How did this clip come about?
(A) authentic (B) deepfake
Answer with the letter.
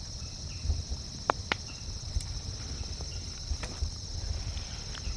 B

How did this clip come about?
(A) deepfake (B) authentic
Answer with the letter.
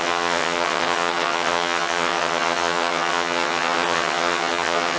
A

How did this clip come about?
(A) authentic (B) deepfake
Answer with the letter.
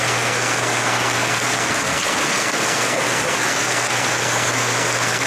B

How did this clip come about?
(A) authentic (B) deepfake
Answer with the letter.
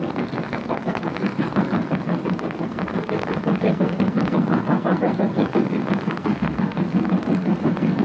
B